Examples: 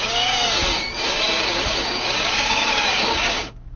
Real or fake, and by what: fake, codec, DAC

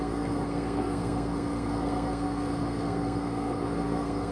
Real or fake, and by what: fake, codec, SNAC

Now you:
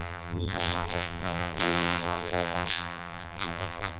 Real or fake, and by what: fake, vocoder, BigVGAN v2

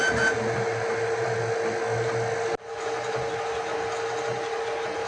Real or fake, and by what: real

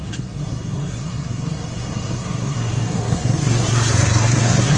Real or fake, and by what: fake, codec, SNAC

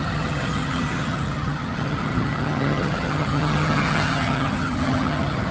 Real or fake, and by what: fake, vocoder, HiFi-GAN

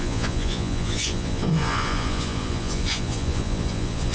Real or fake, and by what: fake, vocoder, Vocos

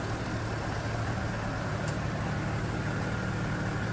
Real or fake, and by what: real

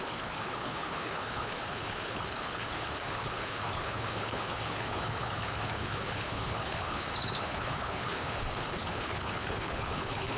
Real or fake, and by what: fake, codec, HILCodec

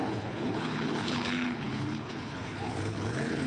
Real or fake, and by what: fake, codec, HILCodec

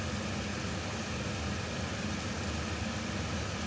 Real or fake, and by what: real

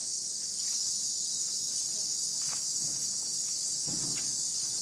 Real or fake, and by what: fake, codec, DAC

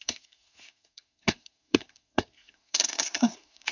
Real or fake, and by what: fake, codec, SNAC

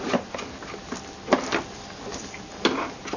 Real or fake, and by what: real